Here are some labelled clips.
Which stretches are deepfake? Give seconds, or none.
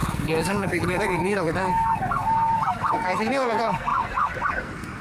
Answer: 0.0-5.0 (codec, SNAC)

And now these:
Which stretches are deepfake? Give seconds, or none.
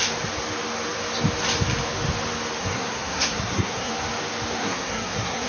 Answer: 2.6-3.9 (codec, SNAC); 4.6-5.5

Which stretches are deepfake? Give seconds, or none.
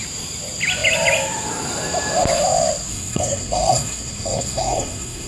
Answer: 2.9-5.3 (codec, SNAC)